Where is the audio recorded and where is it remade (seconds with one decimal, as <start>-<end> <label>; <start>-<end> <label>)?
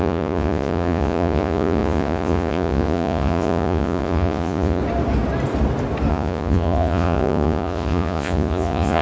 0.0-4.8 remade; 4.8-6.1 recorded; 6.1-9.0 remade